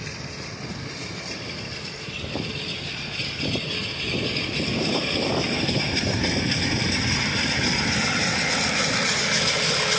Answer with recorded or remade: recorded